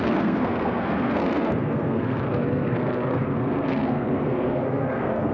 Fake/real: fake